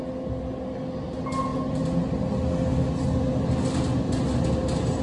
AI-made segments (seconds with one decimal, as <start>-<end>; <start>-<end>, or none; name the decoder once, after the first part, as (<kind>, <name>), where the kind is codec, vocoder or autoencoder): none